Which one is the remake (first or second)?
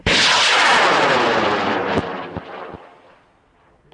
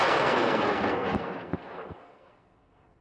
second